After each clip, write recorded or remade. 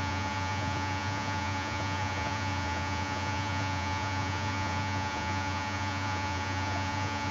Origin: remade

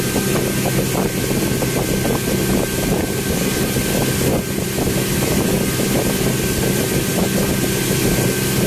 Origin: recorded